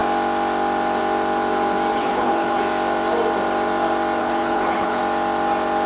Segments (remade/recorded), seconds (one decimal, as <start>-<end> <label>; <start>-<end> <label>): 0.0-1.9 recorded; 1.9-2.6 remade; 2.6-4.2 recorded; 4.2-5.0 remade; 5.0-5.9 recorded